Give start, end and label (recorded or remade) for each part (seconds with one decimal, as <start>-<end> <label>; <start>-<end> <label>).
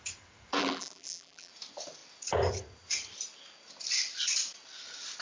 0.0-0.6 recorded; 0.6-1.5 remade; 1.5-5.2 recorded